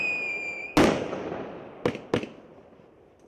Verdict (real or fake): real